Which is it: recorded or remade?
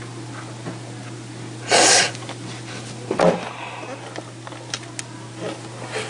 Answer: recorded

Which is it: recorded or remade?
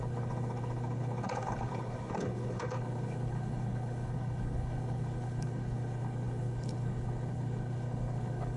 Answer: remade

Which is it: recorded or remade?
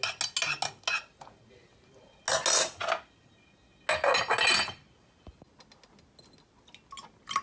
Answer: recorded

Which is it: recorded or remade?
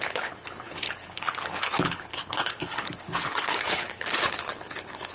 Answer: remade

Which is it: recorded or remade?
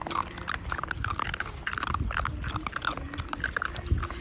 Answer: recorded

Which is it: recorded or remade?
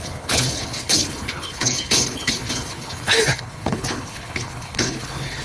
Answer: remade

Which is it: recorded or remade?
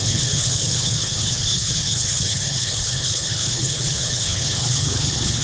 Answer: remade